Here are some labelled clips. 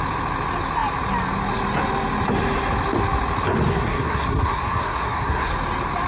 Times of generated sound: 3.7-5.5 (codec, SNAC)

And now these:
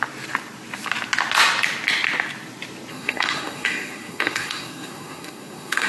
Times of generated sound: 2.9-5.9 (codec, SNAC)